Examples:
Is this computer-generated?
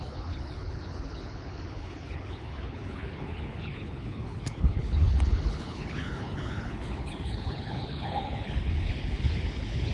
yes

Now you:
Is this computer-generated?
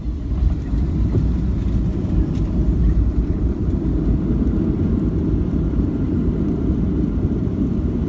yes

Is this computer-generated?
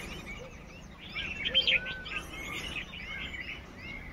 no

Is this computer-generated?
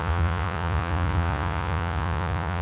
yes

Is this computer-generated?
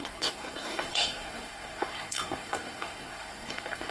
yes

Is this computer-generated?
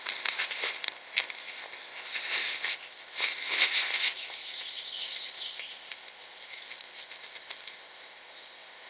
yes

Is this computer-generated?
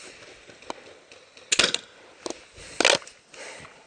no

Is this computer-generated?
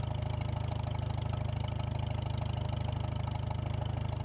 no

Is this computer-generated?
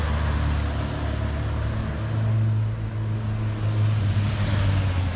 no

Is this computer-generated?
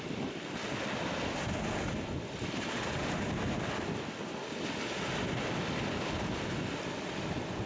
no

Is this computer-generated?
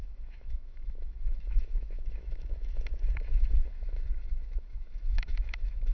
yes